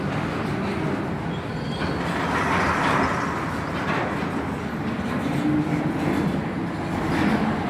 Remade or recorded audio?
recorded